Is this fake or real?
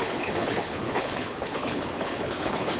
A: fake